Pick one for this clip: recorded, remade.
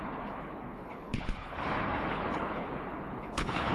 remade